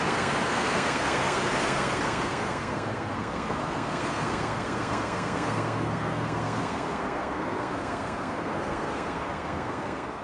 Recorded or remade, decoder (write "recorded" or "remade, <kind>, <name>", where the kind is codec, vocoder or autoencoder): remade, codec, SNAC